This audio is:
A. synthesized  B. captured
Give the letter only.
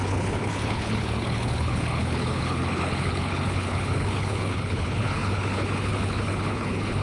A